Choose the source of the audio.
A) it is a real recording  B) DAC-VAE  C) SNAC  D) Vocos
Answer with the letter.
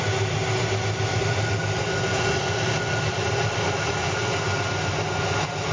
A